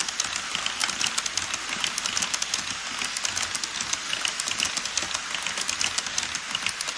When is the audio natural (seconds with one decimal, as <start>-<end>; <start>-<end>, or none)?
0.0-7.0